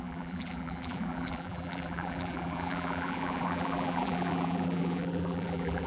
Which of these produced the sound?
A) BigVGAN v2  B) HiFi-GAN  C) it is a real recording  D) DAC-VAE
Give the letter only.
A